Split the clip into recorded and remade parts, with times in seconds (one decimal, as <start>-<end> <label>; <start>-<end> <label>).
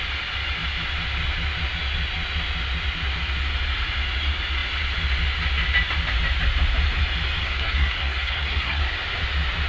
0.0-7.4 recorded; 7.4-8.8 remade; 8.8-9.7 recorded